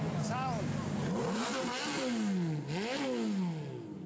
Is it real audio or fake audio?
real